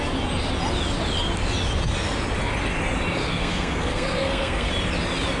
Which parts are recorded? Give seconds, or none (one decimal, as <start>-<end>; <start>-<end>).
0.0-3.2; 4.7-5.4